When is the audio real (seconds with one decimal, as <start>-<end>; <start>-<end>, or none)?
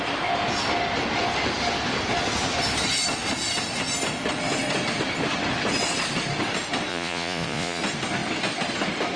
0.0-6.9; 7.8-9.2